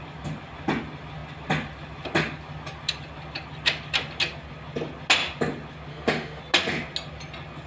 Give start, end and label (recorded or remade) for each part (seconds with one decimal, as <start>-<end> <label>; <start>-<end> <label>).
0.0-5.9 recorded; 5.9-6.4 remade; 6.4-7.7 recorded